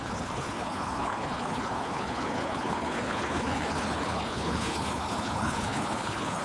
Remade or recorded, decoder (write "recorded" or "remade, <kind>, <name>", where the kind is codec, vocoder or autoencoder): remade, codec, HILCodec